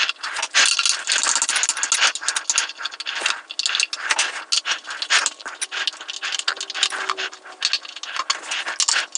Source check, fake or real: real